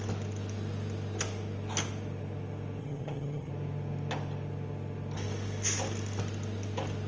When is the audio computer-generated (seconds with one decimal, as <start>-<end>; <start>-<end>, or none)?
2.8-3.5